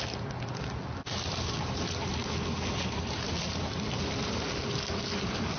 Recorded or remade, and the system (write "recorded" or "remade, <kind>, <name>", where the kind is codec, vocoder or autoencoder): recorded